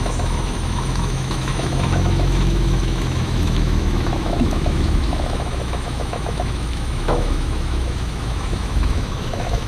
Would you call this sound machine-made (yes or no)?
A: yes